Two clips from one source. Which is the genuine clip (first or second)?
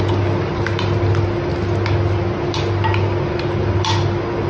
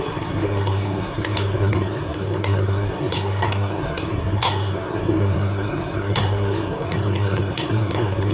first